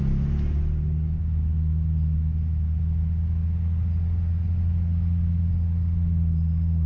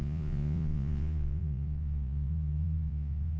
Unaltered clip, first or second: first